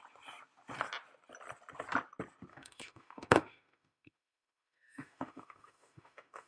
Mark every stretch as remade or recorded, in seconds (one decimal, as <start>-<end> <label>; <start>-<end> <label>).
0.0-2.5 recorded; 2.5-6.5 remade